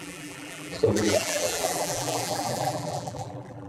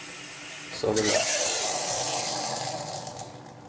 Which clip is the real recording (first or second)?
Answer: second